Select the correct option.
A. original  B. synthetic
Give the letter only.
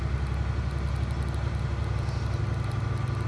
A